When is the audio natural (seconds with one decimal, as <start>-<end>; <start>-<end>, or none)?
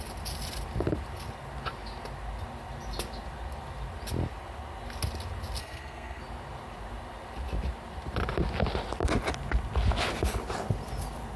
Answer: 0.0-5.6; 6.2-11.4